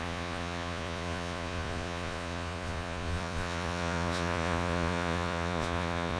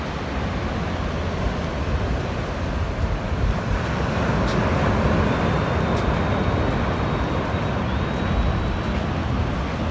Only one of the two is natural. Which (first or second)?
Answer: second